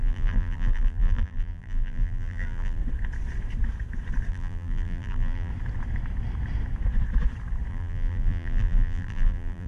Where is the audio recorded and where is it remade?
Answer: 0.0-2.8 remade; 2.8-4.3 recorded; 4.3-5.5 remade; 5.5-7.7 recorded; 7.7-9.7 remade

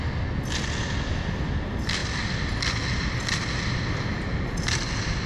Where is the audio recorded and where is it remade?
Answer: 0.0-5.3 recorded

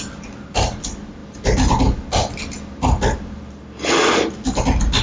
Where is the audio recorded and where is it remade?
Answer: 0.0-5.0 recorded

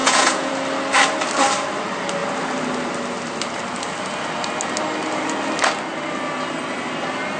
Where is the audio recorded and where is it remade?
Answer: 0.0-0.5 remade; 0.5-7.4 recorded